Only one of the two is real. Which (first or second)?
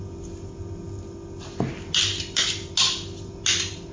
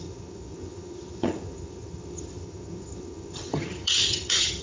first